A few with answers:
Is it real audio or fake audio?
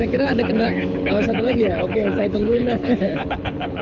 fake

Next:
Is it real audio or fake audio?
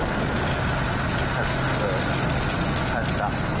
real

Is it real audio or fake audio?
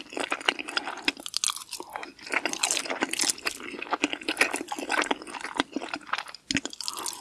real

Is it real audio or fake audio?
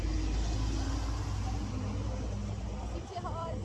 real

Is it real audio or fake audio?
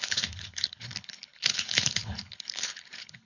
fake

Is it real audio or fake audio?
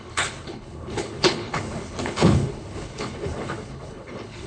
fake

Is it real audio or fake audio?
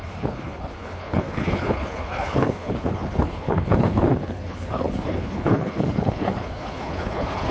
fake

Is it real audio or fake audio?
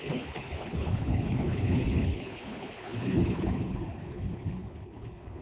fake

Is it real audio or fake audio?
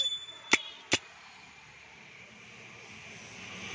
real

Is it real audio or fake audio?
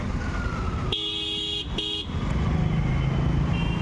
real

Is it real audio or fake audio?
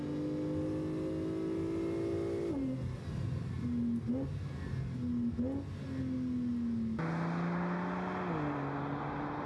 real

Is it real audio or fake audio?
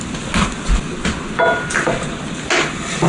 real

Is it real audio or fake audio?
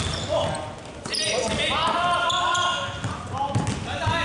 real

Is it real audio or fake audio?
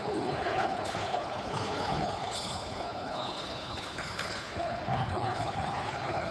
fake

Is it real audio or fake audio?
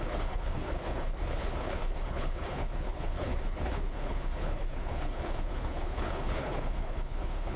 fake